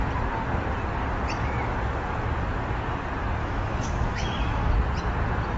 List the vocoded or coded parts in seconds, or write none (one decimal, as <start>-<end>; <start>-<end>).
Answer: 3.4-4.7